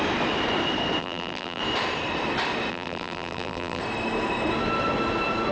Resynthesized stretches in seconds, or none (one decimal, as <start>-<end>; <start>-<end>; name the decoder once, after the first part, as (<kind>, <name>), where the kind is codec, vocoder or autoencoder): 1.0-1.6 (vocoder, BigVGAN v2); 2.7-3.8